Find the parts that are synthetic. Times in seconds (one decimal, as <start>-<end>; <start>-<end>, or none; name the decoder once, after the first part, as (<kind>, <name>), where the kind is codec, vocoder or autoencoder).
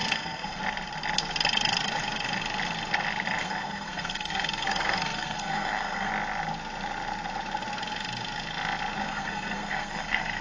0.0-0.6 (codec, SNAC); 3.4-6.1; 9.0-10.4